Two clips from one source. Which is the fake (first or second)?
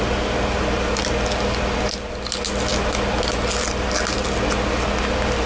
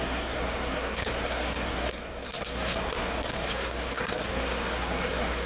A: second